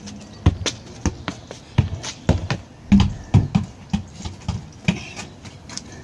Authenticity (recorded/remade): recorded